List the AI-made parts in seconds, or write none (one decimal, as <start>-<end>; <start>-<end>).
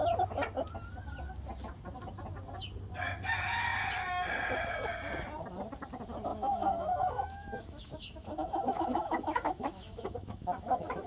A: 6.3-11.1